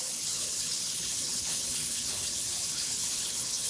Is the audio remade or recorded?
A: remade